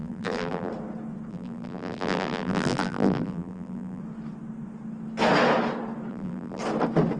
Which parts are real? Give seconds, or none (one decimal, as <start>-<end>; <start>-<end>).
0.7-1.3; 4.0-6.1; 6.6-7.2